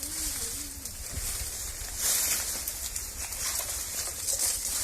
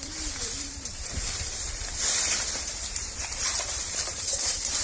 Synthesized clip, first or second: second